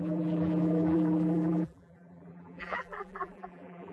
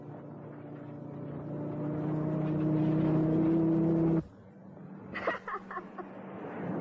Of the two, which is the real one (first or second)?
second